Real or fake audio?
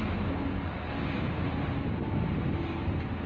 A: real